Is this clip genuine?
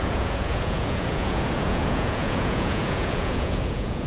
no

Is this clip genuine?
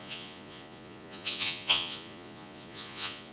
no